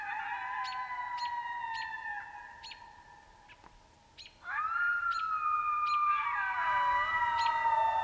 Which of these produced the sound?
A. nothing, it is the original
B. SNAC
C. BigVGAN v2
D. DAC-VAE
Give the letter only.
A